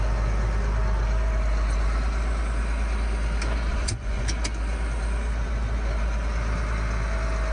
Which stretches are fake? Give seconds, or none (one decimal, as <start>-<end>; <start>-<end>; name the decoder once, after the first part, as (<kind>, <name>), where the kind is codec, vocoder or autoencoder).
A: 3.7-4.2 (vocoder, Vocos)